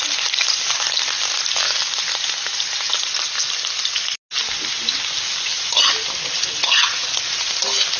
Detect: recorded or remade recorded